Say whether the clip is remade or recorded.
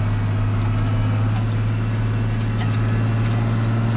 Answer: recorded